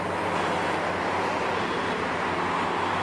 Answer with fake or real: real